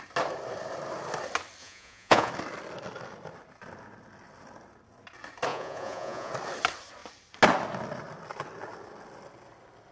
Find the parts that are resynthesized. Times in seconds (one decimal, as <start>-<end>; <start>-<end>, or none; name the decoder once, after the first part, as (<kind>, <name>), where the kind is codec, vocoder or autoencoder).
1.6-2.3 (vocoder, Vocos); 5.5-6.3